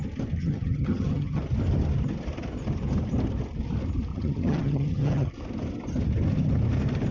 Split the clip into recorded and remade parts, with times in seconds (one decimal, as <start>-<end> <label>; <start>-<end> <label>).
0.0-0.4 recorded; 0.4-1.4 remade; 1.4-4.1 recorded; 4.1-5.3 remade; 5.3-7.1 recorded